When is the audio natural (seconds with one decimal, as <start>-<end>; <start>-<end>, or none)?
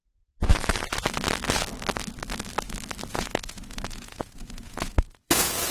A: 0.5-3.1